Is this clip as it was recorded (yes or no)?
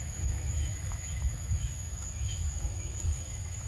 no